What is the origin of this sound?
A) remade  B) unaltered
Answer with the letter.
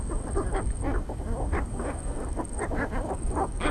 A